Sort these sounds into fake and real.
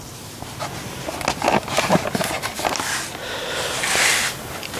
real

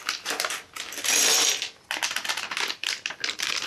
real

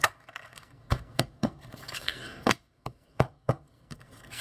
fake